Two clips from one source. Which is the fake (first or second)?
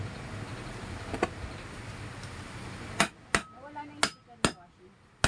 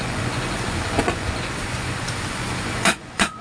second